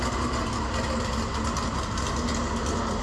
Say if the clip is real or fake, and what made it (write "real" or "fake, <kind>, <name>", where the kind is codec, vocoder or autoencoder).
real